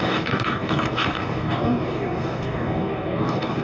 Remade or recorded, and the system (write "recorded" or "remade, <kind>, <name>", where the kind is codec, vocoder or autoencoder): remade, codec, DAC